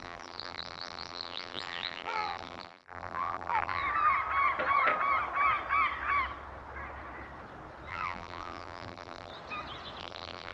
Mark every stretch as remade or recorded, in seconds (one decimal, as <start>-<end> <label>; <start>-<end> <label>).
0.0-3.8 remade; 3.8-7.9 recorded; 7.9-9.3 remade; 9.3-10.0 recorded; 10.0-10.5 remade